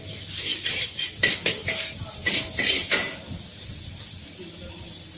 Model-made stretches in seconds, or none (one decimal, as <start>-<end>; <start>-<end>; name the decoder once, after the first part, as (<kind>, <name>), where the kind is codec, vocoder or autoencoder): none